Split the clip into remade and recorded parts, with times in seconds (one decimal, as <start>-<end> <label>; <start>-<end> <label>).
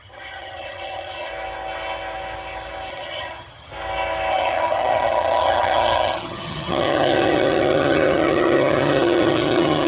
0.0-1.3 remade; 1.3-2.9 recorded; 2.9-3.7 remade; 3.7-4.3 recorded; 4.3-9.9 remade